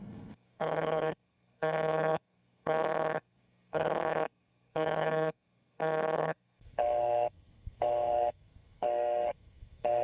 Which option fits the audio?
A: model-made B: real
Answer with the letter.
A